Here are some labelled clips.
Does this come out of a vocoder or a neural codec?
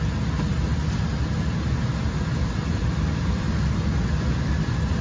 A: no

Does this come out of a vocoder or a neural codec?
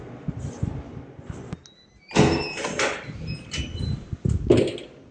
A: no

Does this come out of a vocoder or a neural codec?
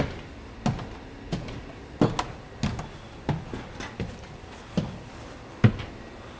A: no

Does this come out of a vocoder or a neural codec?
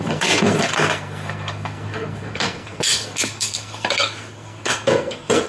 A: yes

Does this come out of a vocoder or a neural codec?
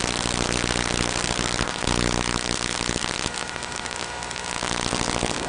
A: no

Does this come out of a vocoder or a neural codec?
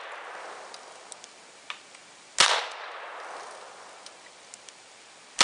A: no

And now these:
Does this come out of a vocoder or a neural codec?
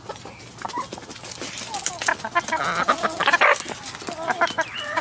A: no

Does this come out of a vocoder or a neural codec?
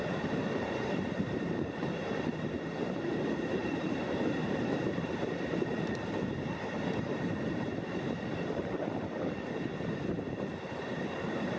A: yes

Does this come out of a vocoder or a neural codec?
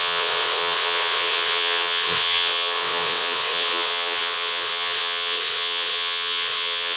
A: yes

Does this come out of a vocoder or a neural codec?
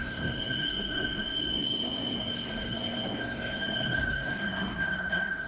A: yes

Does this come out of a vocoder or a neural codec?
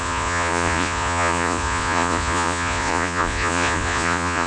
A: yes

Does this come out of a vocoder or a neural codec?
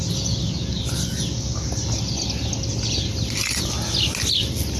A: no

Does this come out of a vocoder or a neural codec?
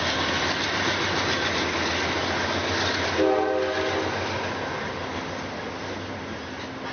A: no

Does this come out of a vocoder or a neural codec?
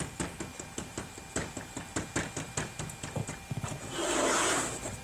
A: no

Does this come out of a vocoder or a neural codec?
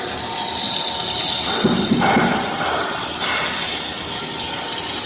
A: no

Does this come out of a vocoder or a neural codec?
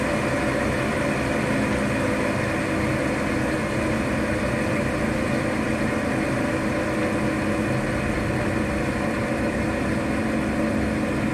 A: no